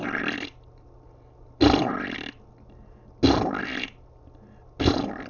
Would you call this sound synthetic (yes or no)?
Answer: no